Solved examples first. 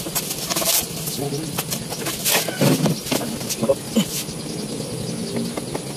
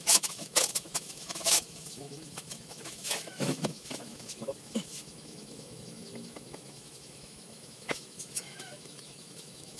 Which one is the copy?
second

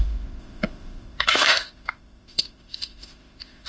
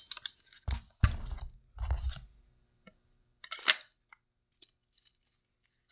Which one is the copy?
first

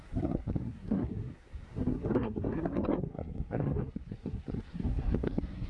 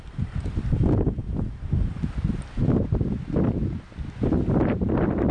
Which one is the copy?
first